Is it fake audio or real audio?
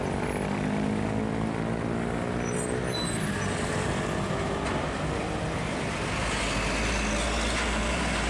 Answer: real